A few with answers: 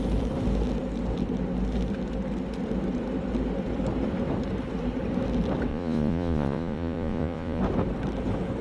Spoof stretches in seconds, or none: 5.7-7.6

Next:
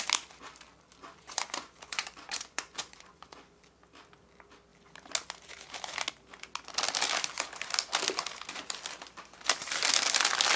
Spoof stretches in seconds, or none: 1.0-3.5

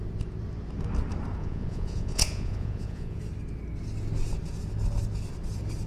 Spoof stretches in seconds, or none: 1.4-3.2

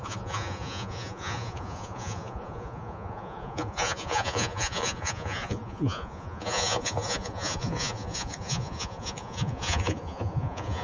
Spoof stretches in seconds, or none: 0.0-10.8

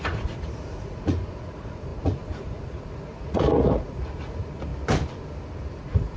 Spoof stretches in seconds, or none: 0.0-4.7; 5.8-6.2

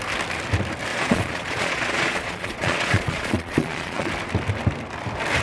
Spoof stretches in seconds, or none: 0.9-4.1

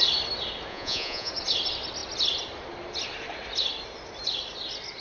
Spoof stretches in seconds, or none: 0.7-1.3